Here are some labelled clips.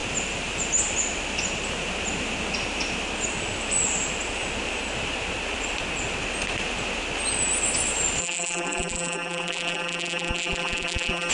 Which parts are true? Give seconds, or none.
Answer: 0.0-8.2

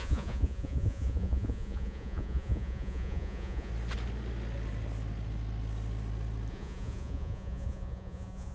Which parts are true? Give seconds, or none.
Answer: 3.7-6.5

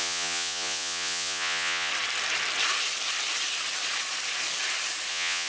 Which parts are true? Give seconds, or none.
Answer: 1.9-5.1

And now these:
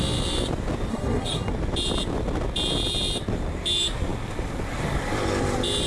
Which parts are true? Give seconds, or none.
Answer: 0.0-0.9; 1.5-5.9